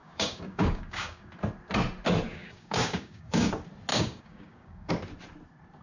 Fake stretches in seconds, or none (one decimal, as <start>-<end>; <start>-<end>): 0.0-1.3; 2.3-3.5; 3.9-4.9